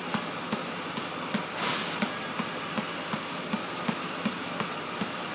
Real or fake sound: real